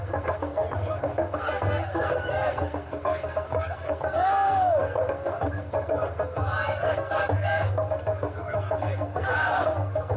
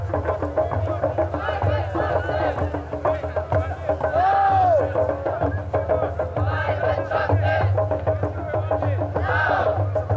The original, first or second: second